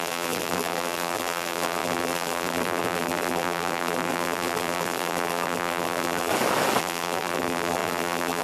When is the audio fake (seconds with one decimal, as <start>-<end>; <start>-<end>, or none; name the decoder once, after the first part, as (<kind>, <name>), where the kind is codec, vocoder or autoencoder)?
0.0-6.3 (vocoder, BigVGAN v2); 6.8-8.4